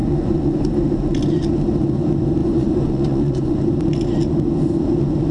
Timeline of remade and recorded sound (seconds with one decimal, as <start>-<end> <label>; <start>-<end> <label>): 0.0-0.7 remade; 0.7-2.4 recorded; 2.4-3.6 remade; 3.6-5.3 recorded